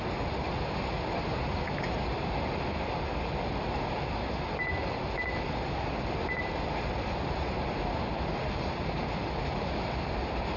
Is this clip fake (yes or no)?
no